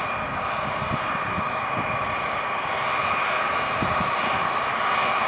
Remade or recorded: recorded